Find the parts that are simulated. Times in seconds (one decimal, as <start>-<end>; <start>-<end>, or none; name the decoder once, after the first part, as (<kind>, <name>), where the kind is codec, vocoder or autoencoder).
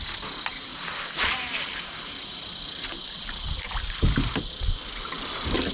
none